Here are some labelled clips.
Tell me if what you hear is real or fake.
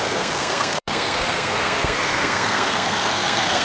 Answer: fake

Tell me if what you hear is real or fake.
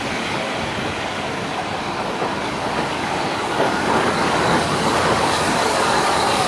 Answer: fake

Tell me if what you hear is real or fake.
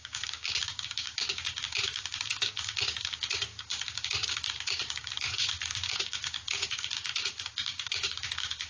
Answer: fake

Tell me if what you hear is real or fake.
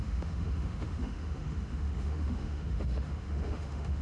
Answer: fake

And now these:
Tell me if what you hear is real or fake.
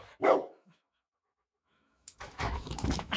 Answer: fake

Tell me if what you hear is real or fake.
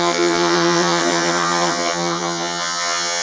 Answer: fake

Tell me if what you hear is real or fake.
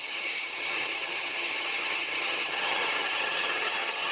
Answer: fake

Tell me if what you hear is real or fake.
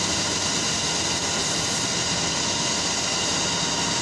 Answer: real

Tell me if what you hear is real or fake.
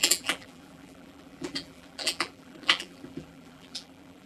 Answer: fake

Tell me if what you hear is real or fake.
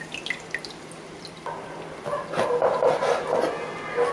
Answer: real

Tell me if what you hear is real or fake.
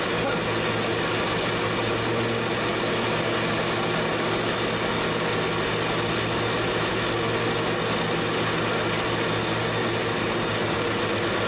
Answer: real